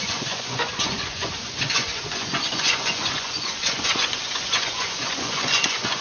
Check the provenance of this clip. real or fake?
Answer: fake